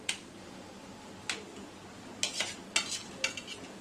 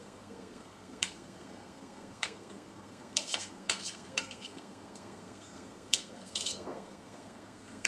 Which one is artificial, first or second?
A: second